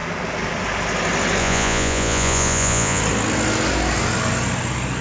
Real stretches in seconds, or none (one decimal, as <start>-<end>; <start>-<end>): 0.0-1.4; 3.0-5.0